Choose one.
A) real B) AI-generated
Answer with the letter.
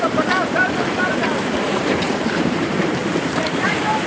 B